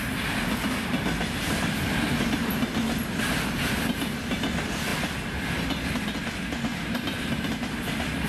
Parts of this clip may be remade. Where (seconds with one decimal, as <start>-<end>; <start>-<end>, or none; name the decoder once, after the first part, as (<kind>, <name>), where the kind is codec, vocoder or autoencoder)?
6.7-7.6 (vocoder, BigVGAN v2)